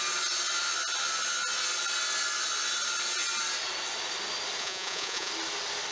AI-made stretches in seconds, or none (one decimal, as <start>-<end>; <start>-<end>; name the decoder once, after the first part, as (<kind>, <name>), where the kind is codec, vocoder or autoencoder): 4.6-5.3 (vocoder, Vocos)